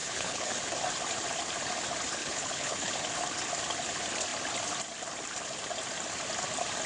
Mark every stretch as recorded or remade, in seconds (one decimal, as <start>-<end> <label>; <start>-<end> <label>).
0.0-0.5 remade; 0.5-2.2 recorded; 2.2-2.9 remade; 2.9-6.9 recorded